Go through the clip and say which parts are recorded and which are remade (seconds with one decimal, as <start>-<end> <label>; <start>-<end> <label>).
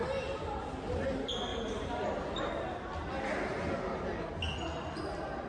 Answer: 0.0-1.5 recorded; 1.5-2.5 remade; 2.5-5.5 recorded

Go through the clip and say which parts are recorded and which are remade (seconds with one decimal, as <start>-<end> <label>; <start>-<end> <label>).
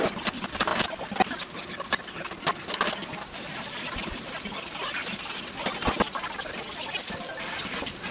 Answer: 0.0-8.1 recorded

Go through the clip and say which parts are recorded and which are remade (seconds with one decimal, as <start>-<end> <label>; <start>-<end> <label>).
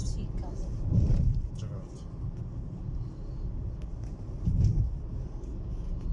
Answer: 0.0-1.5 remade; 1.5-3.9 recorded; 3.9-4.8 remade; 4.8-6.1 recorded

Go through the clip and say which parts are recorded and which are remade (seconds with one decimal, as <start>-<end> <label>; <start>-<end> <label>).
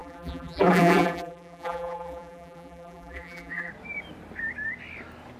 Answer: 0.0-3.7 remade; 3.7-5.4 recorded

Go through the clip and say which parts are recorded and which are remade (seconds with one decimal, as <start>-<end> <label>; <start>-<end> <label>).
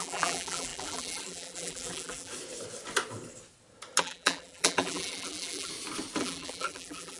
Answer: 0.0-2.3 remade; 2.3-4.0 recorded; 4.0-5.7 remade; 5.7-6.2 recorded; 6.2-7.2 remade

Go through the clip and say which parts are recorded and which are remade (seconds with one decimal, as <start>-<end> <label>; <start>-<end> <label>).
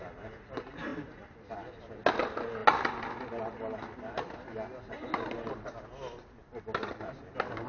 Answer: 0.0-7.7 recorded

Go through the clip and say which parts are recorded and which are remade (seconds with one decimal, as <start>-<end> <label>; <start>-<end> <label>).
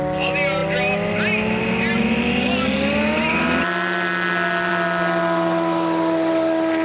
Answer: 0.0-6.8 recorded